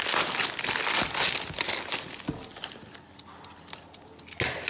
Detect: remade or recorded recorded